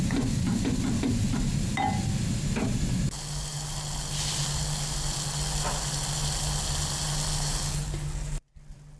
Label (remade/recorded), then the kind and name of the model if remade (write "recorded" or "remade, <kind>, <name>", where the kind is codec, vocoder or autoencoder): recorded